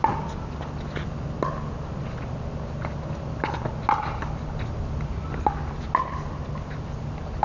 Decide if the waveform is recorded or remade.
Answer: recorded